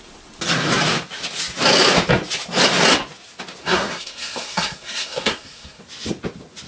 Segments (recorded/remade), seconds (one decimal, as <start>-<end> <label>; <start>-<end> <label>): 0.0-3.6 recorded; 3.6-5.8 remade; 5.8-6.7 recorded